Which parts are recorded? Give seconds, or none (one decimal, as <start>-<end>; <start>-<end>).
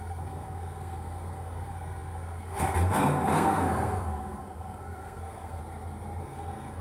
5.6-6.2